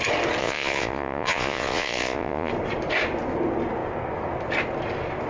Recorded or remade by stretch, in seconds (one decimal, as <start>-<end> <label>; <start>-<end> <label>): 0.0-0.4 recorded; 0.4-2.5 remade; 2.5-5.3 recorded